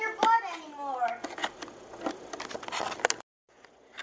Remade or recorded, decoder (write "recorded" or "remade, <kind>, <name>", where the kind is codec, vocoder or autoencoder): recorded